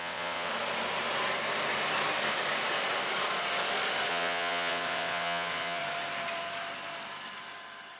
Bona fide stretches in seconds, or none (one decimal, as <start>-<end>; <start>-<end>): 0.5-4.1; 5.8-8.0